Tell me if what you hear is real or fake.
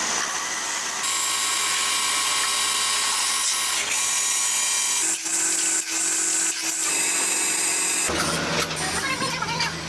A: real